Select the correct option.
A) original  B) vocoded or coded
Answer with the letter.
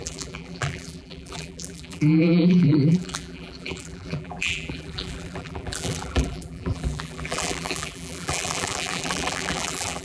B